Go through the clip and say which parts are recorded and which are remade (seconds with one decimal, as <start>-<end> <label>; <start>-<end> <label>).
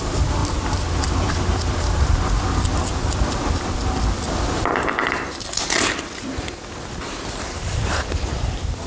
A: 0.0-8.9 remade